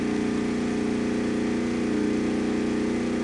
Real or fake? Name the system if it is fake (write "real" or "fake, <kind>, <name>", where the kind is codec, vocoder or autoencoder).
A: real